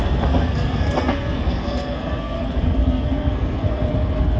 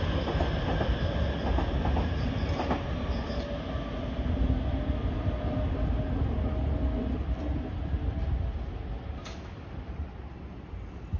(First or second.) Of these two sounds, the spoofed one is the first